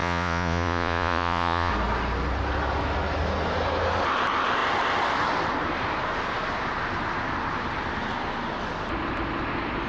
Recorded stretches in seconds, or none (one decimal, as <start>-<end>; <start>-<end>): 1.7-9.9